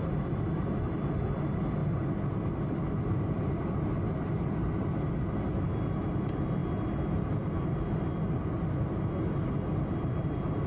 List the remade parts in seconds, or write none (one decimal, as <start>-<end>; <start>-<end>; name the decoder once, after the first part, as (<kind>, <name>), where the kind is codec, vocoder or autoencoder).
none